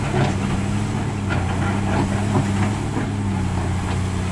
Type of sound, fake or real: real